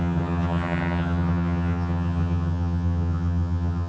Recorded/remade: remade